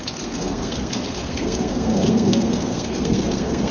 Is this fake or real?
fake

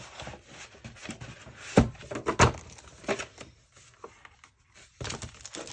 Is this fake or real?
real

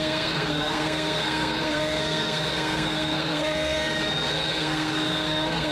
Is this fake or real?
fake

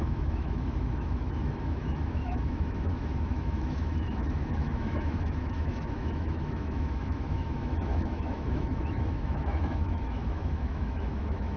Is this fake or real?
fake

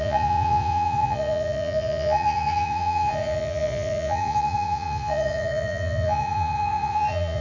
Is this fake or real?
fake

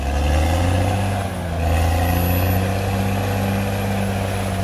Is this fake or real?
real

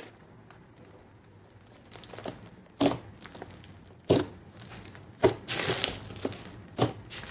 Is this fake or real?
real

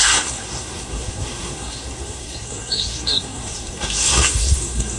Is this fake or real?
fake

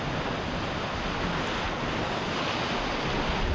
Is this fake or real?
real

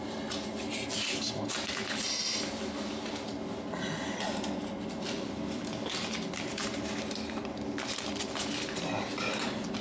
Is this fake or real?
real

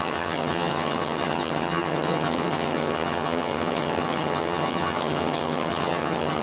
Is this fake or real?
fake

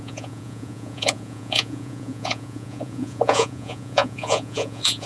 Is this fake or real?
fake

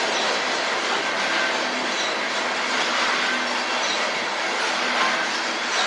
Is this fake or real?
real